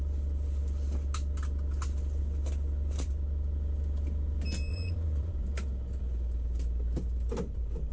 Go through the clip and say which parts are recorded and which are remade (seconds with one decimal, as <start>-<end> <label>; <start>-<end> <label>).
0.0-4.7 recorded; 4.7-5.3 remade; 5.3-7.9 recorded